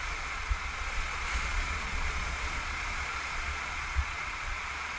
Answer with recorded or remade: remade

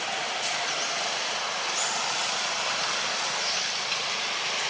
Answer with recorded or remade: recorded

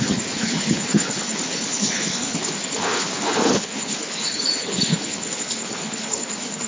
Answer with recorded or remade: remade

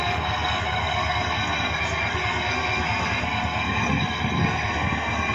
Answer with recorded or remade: remade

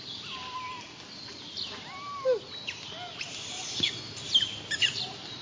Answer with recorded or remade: recorded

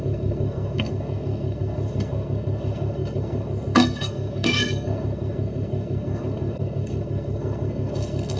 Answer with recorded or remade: remade